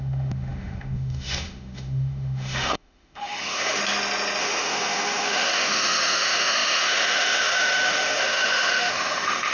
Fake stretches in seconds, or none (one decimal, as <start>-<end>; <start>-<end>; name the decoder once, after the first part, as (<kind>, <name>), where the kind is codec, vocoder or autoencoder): 0.0-3.8 (autoencoder, DAC-VAE); 4.4-9.5